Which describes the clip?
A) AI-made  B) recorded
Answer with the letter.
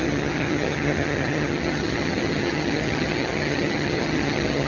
A